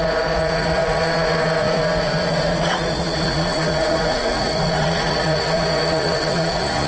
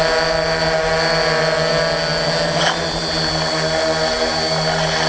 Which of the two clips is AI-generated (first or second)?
first